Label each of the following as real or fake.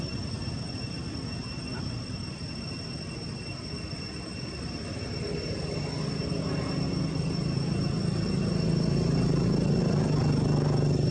real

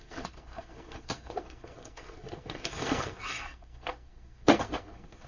fake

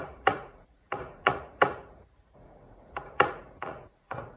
fake